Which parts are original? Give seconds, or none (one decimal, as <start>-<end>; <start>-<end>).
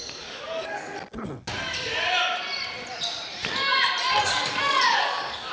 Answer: 0.9-4.2